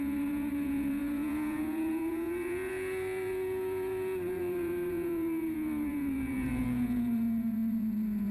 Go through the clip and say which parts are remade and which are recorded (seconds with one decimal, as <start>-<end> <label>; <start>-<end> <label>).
0.0-8.3 remade